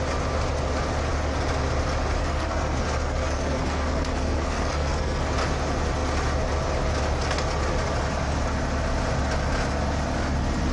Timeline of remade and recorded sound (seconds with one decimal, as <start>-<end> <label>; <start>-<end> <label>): 0.0-2.2 recorded; 2.2-5.2 remade; 5.2-10.7 recorded